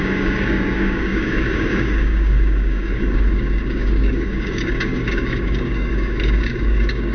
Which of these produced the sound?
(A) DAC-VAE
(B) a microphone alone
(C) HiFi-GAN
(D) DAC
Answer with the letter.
D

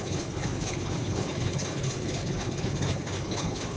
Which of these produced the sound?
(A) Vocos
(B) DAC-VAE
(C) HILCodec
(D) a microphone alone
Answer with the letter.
C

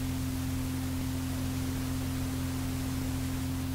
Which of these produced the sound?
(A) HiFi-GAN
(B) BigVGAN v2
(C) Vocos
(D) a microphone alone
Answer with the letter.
D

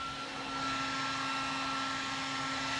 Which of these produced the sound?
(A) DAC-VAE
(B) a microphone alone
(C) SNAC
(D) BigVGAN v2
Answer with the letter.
B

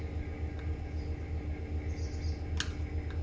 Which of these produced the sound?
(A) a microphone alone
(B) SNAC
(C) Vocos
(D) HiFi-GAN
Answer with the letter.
A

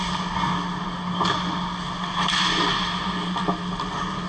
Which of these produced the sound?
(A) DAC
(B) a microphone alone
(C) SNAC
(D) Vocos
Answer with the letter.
B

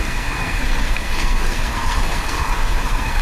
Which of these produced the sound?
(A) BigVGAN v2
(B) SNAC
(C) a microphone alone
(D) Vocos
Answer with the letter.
B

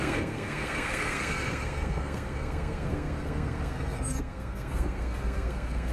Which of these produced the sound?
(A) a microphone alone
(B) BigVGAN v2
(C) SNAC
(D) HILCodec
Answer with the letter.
C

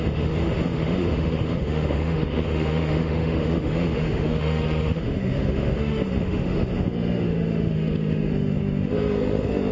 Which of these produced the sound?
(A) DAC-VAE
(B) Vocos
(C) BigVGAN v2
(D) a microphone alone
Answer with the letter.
A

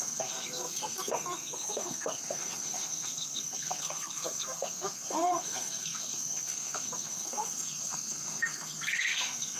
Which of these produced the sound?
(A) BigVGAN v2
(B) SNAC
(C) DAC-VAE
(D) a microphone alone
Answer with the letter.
B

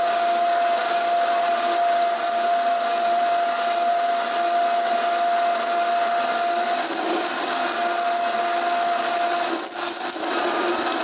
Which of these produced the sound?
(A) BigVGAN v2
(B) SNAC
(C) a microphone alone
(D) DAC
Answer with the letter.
C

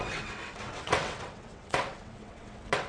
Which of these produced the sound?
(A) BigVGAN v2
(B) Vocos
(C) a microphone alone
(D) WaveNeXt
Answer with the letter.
D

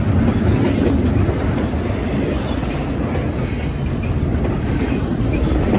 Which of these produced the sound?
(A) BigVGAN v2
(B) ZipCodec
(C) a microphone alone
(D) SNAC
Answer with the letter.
C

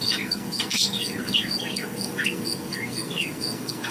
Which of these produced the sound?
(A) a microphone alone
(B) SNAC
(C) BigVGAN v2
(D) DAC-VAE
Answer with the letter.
B